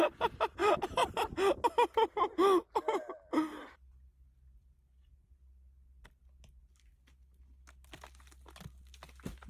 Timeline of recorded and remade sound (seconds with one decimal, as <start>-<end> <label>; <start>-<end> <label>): 0.0-9.5 recorded